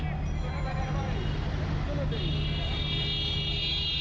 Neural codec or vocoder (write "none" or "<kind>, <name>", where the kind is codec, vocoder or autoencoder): none